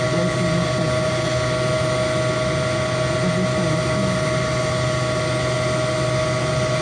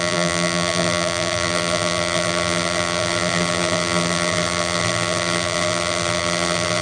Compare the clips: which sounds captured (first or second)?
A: first